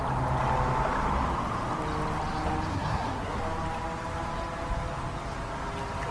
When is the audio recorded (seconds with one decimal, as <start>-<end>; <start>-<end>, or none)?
0.0-2.7; 3.4-6.1